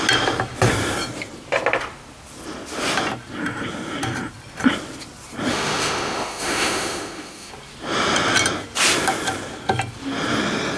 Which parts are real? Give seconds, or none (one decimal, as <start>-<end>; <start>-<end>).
0.0-5.5; 7.5-10.8